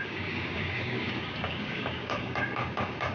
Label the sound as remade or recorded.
remade